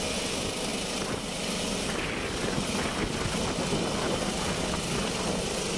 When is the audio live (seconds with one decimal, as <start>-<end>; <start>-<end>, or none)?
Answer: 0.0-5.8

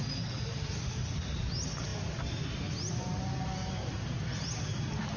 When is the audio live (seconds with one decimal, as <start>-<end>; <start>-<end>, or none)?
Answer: 0.0-5.2

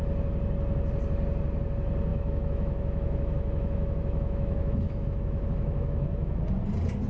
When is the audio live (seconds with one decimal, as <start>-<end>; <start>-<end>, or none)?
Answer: 0.0-2.1; 6.4-7.1

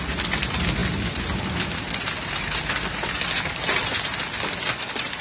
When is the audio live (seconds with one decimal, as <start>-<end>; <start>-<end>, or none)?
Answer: 0.0-5.2

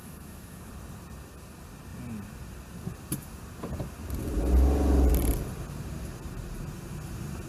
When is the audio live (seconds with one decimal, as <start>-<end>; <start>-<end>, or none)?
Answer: 0.7-7.5

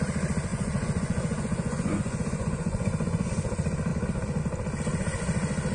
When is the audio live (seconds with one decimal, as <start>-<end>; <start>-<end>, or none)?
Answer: 0.0-0.5; 3.3-5.7